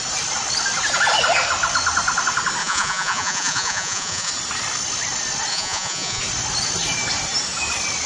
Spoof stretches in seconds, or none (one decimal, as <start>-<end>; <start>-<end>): 2.6-4.3; 5.5-6.2